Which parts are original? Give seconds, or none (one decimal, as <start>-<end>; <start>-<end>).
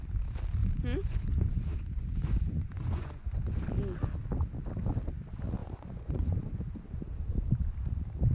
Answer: 0.0-0.6; 3.7-5.6; 6.6-8.3